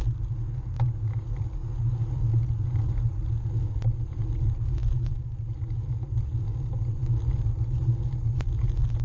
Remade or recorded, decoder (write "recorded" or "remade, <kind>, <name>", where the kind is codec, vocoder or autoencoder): recorded